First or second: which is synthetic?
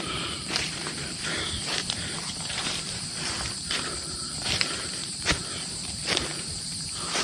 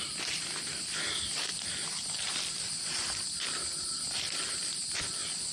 first